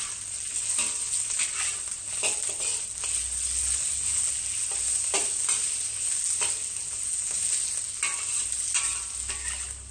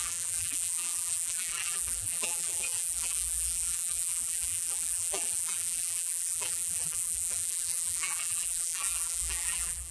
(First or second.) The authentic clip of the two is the first